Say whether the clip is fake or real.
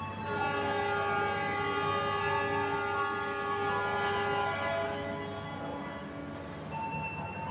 real